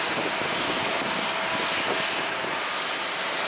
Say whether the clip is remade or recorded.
recorded